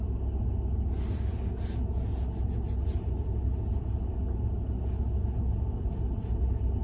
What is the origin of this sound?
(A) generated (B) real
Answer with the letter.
B